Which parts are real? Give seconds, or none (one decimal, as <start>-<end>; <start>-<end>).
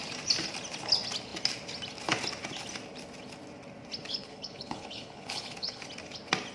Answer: 0.0-4.1; 5.9-6.5